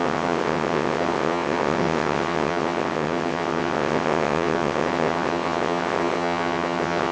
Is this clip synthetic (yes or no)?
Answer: yes